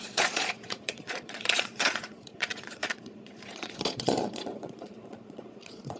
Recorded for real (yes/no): no